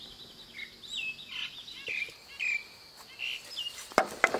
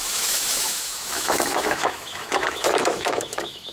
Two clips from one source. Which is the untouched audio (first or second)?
first